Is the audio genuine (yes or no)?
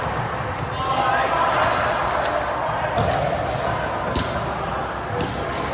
yes